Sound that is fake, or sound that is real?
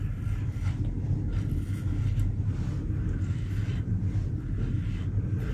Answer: real